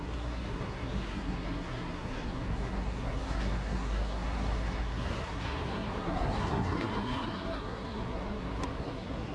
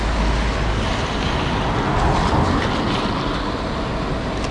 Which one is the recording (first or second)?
second